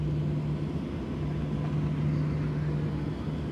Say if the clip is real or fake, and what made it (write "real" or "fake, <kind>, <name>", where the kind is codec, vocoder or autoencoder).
real